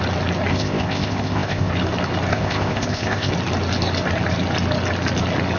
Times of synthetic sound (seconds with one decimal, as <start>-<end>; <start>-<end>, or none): 0.5-1.7; 2.3-3.3

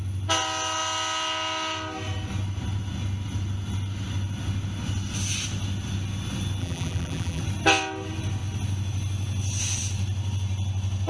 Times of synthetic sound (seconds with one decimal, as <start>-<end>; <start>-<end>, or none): 6.6-7.4

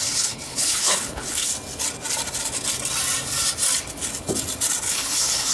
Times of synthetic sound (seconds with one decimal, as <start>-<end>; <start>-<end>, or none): 0.0-1.5; 4.8-5.5

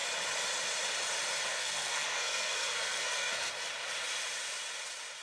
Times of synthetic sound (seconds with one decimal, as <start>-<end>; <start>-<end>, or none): 1.5-3.5

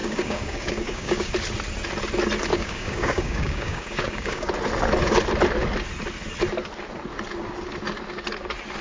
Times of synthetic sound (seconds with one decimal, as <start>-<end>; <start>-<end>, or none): 0.0-1.3; 2.5-4.5

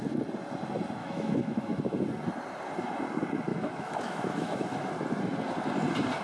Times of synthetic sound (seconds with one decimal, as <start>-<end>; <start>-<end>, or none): 1.0-1.8; 3.5-4.9